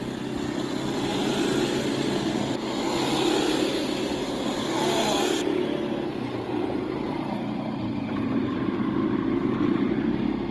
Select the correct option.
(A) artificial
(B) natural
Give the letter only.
B